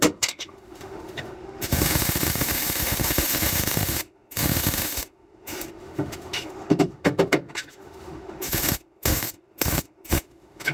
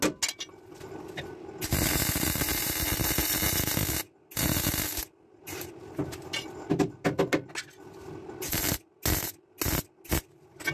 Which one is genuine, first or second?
second